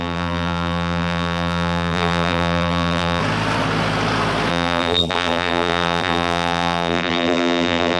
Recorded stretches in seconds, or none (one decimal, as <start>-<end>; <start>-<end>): 3.2-4.5

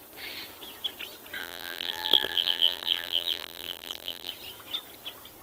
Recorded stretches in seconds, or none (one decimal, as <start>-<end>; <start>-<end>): 0.0-1.4; 4.3-5.4

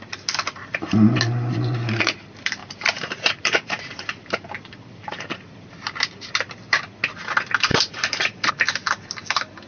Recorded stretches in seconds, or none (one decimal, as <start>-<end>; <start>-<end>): 0.0-0.6; 1.2-2.6; 6.3-7.7; 8.5-9.7

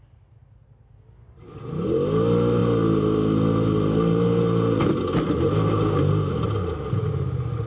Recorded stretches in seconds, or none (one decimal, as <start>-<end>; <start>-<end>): 0.0-7.7

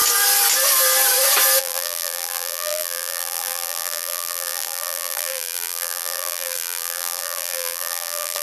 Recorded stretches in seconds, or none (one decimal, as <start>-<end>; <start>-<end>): 0.0-1.6

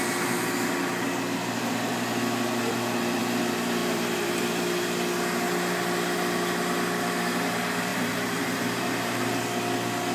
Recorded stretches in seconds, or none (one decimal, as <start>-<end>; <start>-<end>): 0.0-3.8; 4.5-7.9; 9.3-10.1

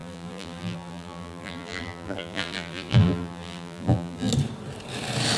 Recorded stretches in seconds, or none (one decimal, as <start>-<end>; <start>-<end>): 4.3-5.4